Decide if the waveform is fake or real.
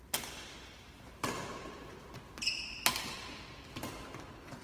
real